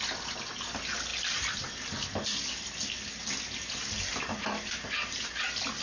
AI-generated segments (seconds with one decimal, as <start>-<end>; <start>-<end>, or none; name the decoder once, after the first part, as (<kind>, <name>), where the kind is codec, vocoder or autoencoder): none